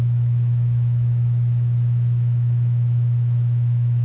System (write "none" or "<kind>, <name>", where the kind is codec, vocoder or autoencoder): autoencoder, DAC-VAE